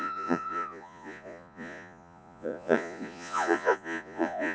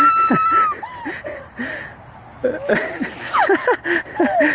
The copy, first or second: first